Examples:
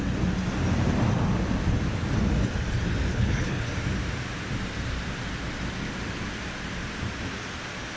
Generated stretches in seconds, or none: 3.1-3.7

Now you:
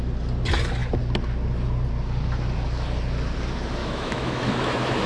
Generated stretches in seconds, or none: 3.8-5.1

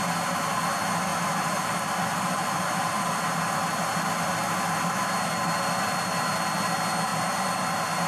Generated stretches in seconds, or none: 1.1-6.0; 7.1-8.1

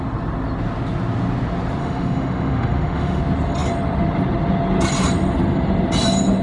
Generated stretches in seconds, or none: 1.8-3.2

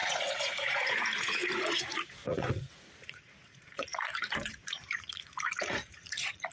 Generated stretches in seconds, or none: 0.0-6.5

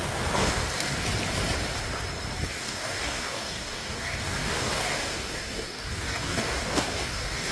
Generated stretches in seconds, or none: 0.0-0.6; 2.6-7.5

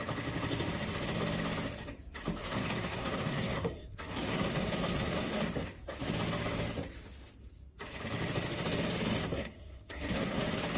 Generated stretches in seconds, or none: 2.4-5.4; 9.2-10.4

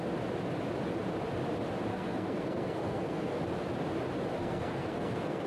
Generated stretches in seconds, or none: 1.9-3.4; 4.4-5.5